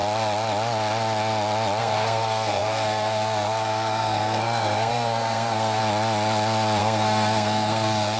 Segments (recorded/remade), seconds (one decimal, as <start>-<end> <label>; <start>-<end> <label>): 0.0-1.8 recorded; 1.8-5.8 remade; 5.8-6.8 recorded; 6.8-8.2 remade